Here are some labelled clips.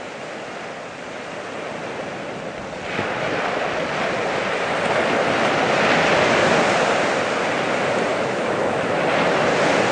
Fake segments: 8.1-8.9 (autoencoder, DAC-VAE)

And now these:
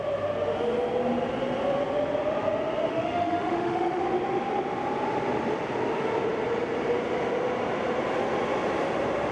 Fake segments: 2.9-4.0 (autoencoder, DAC-VAE)

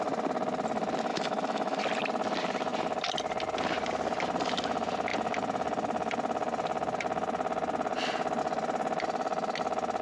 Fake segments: 1.1-1.8 (autoencoder, DAC-VAE)